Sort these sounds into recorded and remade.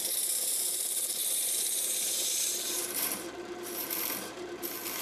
remade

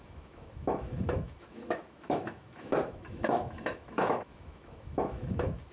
remade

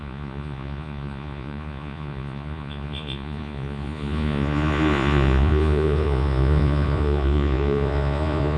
remade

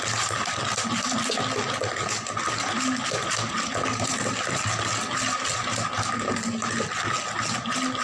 recorded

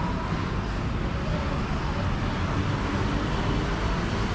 recorded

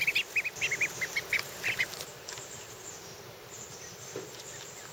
recorded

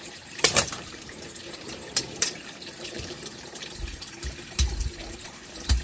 remade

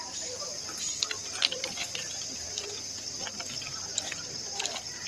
recorded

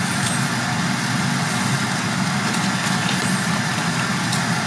recorded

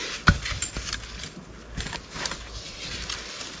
recorded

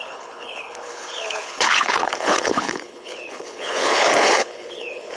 remade